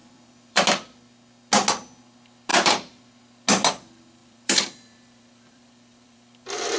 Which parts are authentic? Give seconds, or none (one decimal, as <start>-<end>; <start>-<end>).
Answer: 0.6-2.5; 3.0-4.2